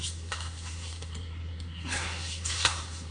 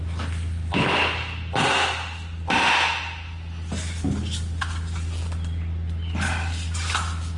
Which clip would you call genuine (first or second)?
second